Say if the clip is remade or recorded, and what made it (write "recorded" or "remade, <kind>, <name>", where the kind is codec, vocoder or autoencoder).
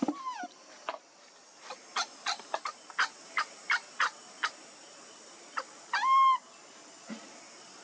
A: recorded